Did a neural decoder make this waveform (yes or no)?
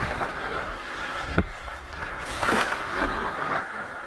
yes